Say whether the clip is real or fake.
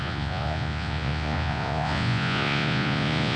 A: fake